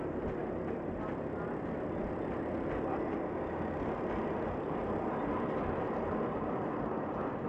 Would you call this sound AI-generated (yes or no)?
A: no